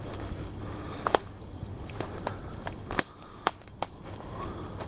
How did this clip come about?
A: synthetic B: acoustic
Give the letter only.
A